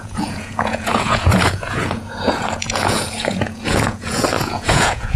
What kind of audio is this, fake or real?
fake